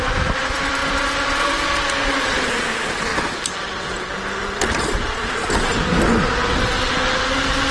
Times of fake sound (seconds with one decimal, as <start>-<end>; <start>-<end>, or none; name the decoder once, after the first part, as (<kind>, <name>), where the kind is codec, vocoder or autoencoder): 0.0-0.8 (vocoder, BigVGAN v2); 2.5-3.1; 4.8-6.7